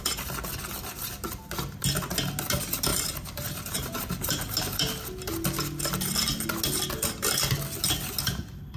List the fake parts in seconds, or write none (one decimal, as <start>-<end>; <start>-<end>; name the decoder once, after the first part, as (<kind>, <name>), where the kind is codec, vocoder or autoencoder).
2.9-4.6 (vocoder, BigVGAN v2)